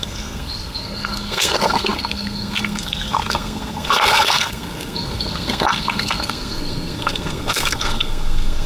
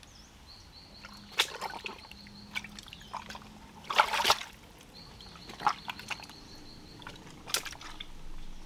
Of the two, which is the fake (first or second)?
first